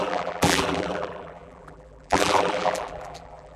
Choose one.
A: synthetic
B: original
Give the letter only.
A